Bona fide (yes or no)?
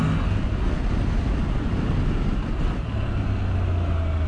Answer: yes